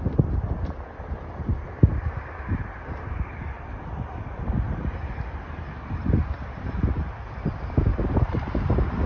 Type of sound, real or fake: fake